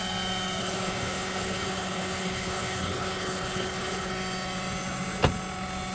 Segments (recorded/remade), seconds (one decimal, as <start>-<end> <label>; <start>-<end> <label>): 0.0-0.6 recorded; 0.6-4.1 remade; 4.1-5.9 recorded